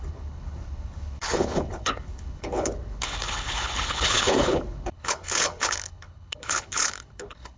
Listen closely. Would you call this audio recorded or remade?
remade